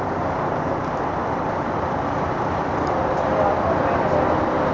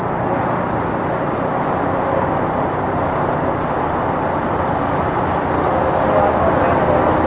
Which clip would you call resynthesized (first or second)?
first